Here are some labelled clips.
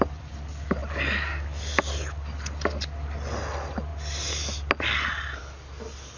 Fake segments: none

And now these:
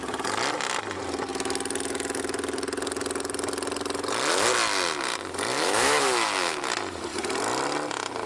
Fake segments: 5.5-6.7 (autoencoder, DAC-VAE)

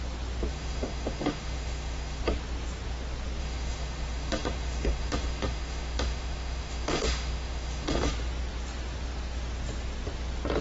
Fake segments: 0.5-2.2 (autoencoder, DAC-VAE); 3.4-8.1

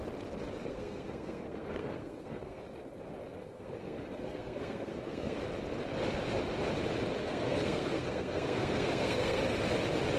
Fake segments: 0.7-2.6 (codec, SNAC); 3.4-5.4; 7.2-9.4

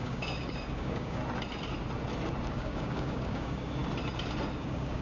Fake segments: 0.0-1.2 (codec, DAC); 2.5-3.8; 4.6-5.0

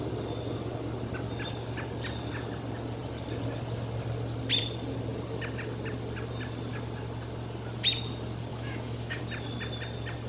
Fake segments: 8.5-9.2 (autoencoder, DAC-VAE)

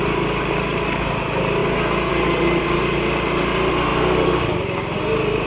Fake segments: none

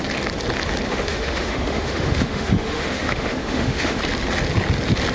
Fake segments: 0.9-4.0 (autoencoder, DAC-VAE)